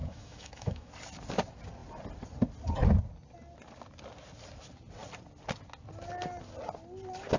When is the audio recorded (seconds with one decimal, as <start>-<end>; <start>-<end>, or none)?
0.9-7.4